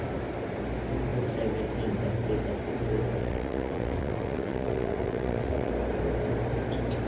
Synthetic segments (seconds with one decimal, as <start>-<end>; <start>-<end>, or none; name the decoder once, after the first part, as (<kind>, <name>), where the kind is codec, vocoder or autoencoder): 3.2-5.7 (vocoder, WaveNeXt)